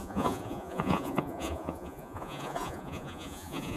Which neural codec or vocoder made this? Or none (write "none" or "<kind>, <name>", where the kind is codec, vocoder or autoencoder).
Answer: vocoder, Vocos